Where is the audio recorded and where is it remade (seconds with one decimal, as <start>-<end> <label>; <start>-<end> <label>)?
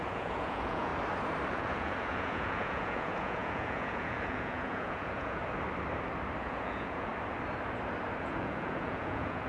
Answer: 0.0-0.9 remade; 0.9-1.5 recorded; 1.5-5.4 remade; 5.4-6.4 recorded; 6.4-7.1 remade; 7.1-8.2 recorded; 8.2-9.5 remade